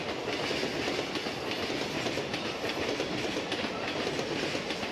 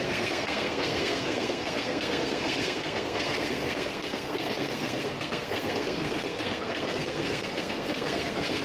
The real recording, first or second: first